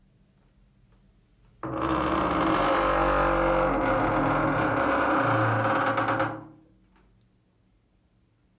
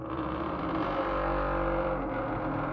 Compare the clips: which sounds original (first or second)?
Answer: first